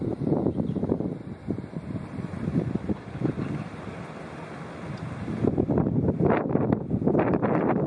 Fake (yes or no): yes